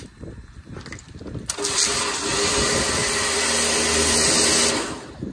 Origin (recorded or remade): recorded